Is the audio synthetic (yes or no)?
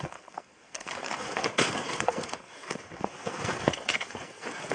yes